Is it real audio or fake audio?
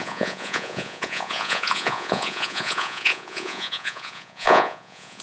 fake